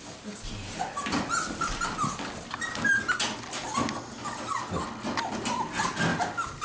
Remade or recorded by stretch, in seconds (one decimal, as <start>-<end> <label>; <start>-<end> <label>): 0.0-6.6 recorded